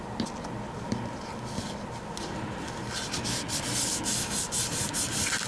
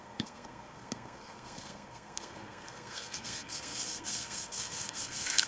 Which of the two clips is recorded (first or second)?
first